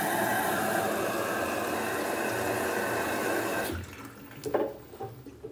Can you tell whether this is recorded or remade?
recorded